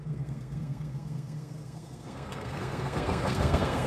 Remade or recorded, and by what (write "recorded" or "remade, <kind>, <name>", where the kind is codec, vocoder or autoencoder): remade, codec, SNAC